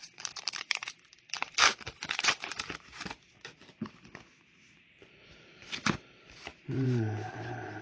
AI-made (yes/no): yes